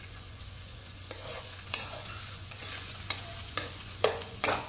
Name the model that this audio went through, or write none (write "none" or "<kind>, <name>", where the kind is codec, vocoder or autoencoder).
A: vocoder, Vocos